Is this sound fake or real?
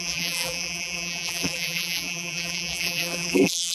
fake